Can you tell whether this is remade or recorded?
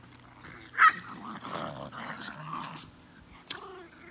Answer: recorded